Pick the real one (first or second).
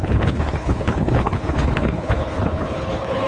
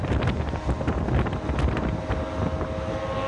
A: second